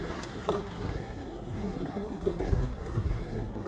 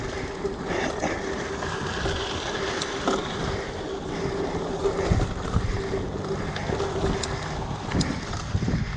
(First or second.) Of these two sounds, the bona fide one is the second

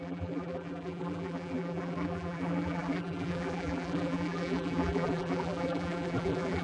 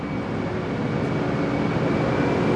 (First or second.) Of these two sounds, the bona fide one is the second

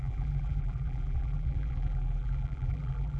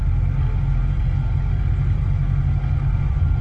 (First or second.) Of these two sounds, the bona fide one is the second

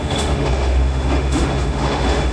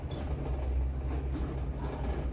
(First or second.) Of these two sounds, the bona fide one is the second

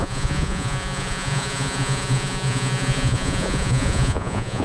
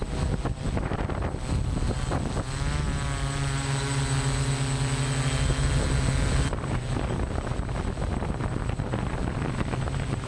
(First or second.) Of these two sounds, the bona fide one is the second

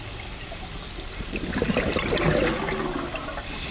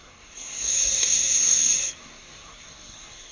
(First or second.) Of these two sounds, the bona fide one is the first